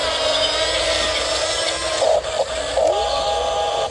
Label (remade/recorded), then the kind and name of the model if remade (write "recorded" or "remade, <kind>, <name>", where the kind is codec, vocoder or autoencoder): recorded